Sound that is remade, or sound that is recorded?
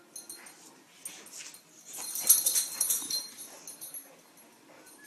recorded